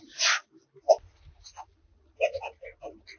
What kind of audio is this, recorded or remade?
recorded